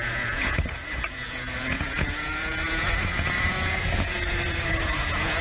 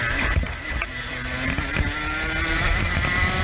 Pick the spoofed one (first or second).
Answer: first